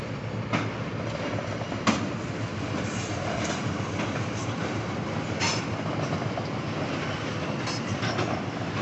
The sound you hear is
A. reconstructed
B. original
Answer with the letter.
B